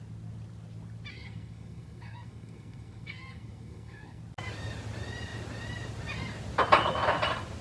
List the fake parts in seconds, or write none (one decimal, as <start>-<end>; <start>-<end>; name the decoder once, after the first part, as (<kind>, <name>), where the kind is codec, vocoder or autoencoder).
1.1-4.2 (codec, SNAC)